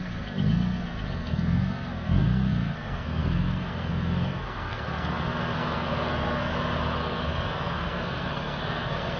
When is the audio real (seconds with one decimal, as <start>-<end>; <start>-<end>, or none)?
6.5-7.0